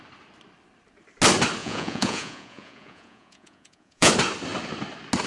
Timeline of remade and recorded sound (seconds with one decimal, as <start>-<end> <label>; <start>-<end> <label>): 0.0-1.6 recorded; 1.6-4.1 remade; 4.1-5.3 recorded